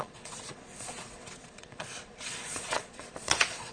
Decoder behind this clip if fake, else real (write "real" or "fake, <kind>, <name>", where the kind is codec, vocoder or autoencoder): fake, vocoder, Vocos